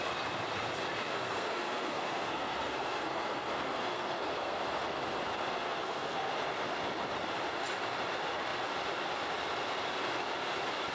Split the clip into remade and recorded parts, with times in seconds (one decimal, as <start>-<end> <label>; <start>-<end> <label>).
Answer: 0.0-1.1 recorded; 1.1-4.6 remade; 4.6-5.5 recorded; 5.5-6.3 remade; 6.3-10.9 recorded